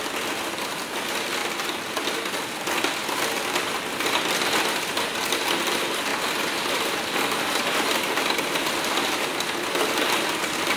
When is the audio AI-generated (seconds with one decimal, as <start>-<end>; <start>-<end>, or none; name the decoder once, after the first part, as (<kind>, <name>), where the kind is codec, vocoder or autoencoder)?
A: 6.1-7.6 (vocoder, BigVGAN v2)